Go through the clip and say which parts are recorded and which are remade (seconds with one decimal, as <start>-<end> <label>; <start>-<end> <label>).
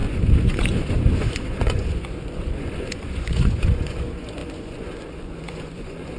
0.0-6.2 remade